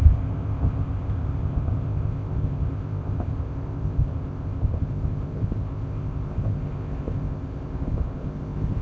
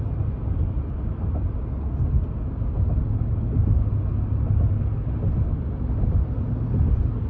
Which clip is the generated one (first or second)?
first